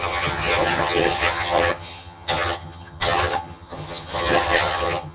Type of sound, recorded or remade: remade